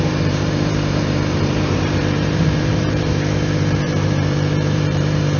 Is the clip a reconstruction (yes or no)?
yes